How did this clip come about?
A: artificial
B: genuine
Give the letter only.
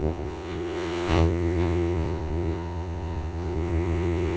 A